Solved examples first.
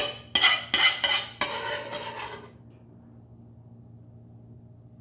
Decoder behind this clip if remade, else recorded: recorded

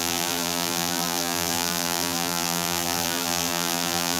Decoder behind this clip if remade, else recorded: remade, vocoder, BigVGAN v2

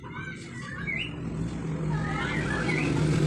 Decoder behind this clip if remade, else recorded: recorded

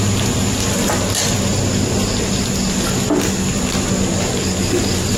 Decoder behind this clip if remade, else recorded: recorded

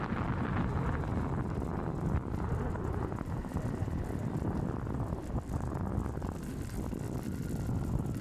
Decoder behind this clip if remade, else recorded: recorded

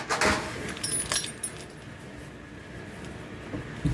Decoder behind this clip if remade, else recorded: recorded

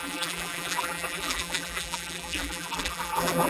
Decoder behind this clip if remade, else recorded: remade, vocoder, BigVGAN v2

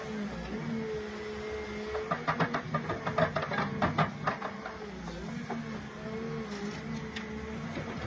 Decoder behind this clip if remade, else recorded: recorded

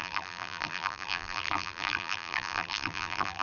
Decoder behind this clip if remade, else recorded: remade, vocoder, BigVGAN v2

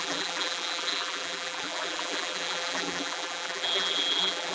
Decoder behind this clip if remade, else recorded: remade, vocoder, BigVGAN v2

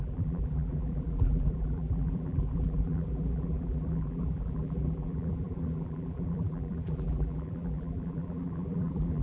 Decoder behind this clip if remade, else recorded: remade, vocoder, BigVGAN v2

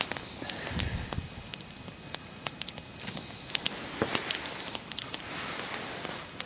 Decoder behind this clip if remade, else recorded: recorded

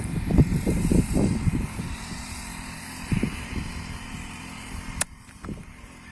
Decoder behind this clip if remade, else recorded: remade, vocoder, BigVGAN v2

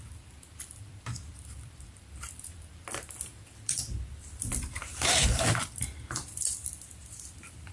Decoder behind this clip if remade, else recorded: remade, vocoder, BigVGAN v2